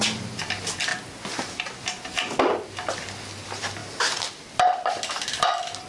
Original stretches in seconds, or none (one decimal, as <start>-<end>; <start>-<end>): 0.0-5.9